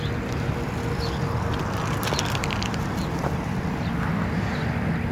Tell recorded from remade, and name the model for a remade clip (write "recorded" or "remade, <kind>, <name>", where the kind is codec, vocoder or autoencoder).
recorded